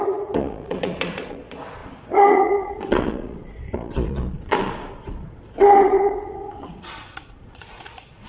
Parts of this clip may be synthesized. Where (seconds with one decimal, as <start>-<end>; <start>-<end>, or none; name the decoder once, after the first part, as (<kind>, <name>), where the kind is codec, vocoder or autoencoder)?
0.0-8.3 (vocoder, Vocos)

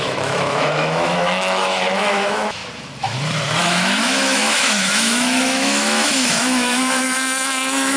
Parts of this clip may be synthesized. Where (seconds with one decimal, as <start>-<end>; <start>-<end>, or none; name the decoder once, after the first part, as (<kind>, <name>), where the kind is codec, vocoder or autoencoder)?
0.0-2.6 (autoencoder, DAC-VAE); 3.6-8.0

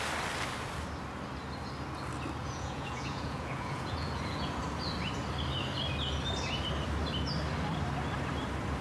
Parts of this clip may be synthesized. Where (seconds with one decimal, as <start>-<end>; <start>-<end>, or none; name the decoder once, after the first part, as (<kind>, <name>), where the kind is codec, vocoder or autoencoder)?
2.4-4.6 (vocoder, Vocos)

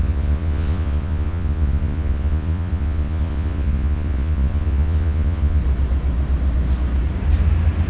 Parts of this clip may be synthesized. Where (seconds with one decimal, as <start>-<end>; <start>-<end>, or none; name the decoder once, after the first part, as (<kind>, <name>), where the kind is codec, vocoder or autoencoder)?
0.0-5.6 (vocoder, Vocos)

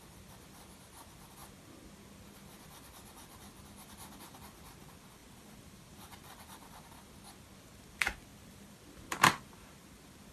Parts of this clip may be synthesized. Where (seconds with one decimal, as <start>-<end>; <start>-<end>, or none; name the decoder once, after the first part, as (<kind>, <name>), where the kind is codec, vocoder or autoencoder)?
5.2-6.8 (vocoder, BigVGAN v2); 8.3-9.4

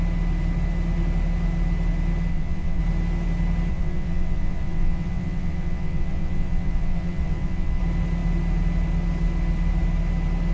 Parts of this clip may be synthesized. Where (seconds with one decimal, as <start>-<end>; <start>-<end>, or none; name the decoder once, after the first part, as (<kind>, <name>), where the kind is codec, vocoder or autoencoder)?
2.3-2.8 (vocoder, WaveNeXt); 3.7-7.8

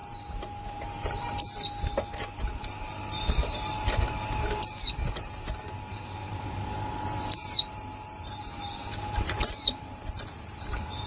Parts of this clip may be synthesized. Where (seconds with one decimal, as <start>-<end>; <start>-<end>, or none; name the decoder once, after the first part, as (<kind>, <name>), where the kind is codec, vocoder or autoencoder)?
none